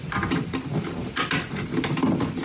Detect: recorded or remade recorded